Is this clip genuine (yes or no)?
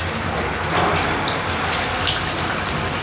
yes